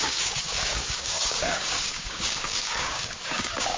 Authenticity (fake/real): fake